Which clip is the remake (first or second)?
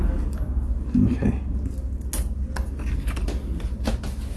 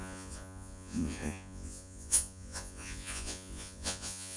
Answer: second